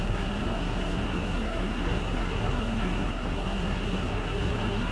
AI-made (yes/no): yes